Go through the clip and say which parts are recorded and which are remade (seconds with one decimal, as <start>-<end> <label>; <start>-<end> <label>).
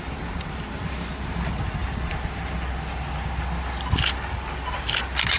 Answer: 0.0-5.4 recorded